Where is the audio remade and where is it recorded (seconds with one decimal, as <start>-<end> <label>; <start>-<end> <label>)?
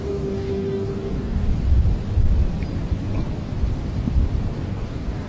0.0-1.5 remade; 1.5-4.7 recorded; 4.7-5.3 remade